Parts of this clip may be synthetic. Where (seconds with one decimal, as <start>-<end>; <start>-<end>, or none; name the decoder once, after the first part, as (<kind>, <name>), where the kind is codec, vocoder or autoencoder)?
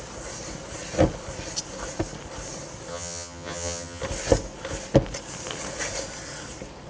2.9-4.0 (vocoder, HiFi-GAN)